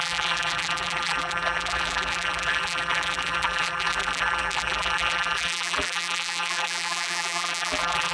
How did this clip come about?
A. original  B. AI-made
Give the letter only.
B